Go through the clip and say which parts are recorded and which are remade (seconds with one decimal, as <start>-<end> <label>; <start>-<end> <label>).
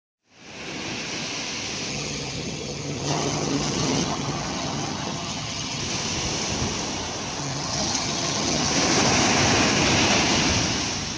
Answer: 0.0-1.9 recorded; 1.9-5.8 remade; 5.8-7.4 recorded; 7.4-8.7 remade; 8.7-11.2 recorded